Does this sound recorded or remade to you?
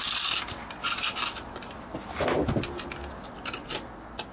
recorded